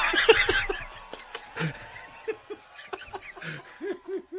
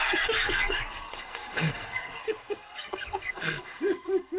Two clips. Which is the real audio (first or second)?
first